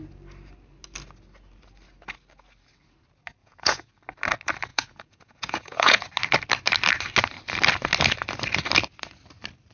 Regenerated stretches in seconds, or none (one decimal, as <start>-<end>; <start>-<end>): 3.4-3.9; 4.7-6.0

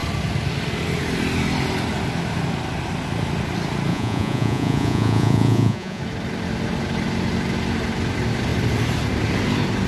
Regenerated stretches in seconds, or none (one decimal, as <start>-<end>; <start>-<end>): 3.9-6.0

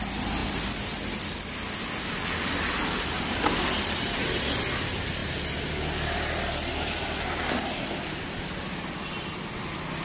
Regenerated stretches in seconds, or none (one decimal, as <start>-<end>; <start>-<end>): none